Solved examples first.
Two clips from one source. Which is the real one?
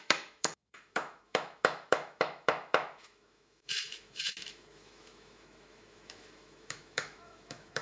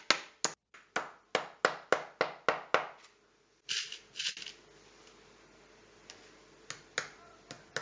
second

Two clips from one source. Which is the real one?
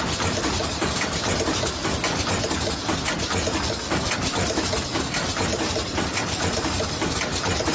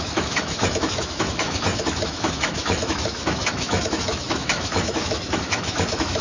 first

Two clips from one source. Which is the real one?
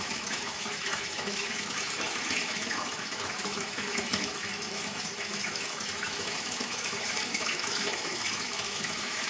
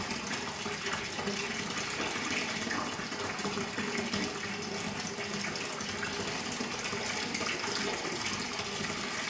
second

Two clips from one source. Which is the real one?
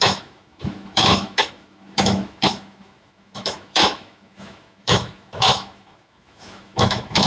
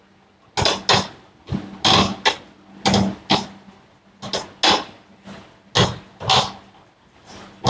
second